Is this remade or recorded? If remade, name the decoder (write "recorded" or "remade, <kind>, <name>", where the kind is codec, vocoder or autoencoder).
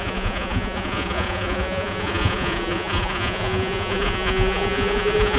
remade, vocoder, Vocos